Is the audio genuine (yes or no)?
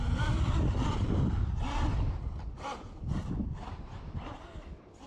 yes